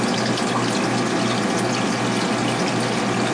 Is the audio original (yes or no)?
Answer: yes